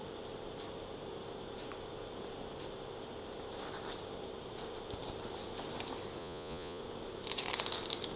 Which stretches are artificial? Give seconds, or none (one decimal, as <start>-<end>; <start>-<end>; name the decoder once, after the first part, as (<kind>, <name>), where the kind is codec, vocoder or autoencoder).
6.2-6.8 (vocoder, Vocos)